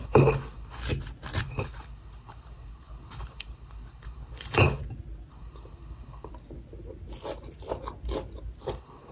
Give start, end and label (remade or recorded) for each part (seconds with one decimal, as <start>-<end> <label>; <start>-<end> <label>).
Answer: 0.0-0.8 remade; 0.8-1.4 recorded; 1.4-4.8 remade; 4.8-5.3 recorded; 5.3-6.3 remade; 6.3-8.6 recorded; 8.6-9.1 remade